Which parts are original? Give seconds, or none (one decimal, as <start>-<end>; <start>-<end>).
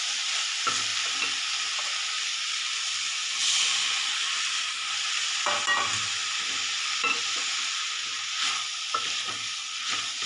0.0-10.3